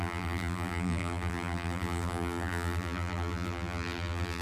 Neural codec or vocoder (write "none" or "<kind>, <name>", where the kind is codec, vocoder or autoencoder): vocoder, BigVGAN v2